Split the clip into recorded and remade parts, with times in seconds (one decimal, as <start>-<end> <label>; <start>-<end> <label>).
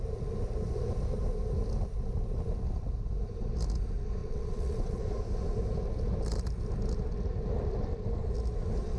0.0-4.2 recorded; 4.2-5.0 remade; 5.0-9.0 recorded